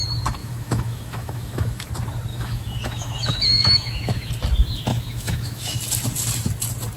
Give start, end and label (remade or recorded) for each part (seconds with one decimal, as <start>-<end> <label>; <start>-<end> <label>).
0.0-0.4 recorded; 0.4-1.9 remade; 1.9-2.3 recorded; 2.3-4.3 remade; 4.3-4.9 recorded; 4.9-5.8 remade; 5.8-7.0 recorded